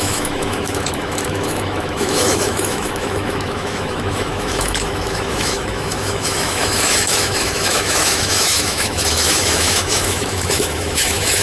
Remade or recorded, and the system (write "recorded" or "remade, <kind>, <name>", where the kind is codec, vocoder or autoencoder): remade, autoencoder, DAC-VAE